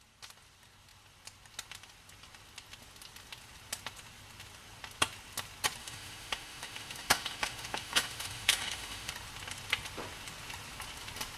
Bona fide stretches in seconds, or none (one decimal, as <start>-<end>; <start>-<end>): 0.0-5.8; 9.1-11.4